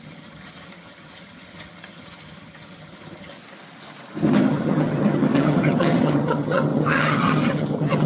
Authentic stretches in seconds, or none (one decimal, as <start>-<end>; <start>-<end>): 3.4-4.3